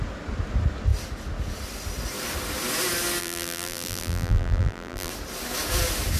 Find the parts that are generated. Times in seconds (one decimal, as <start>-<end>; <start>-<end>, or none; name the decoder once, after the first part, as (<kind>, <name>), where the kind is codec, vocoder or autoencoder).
3.2-5.1 (vocoder, BigVGAN v2)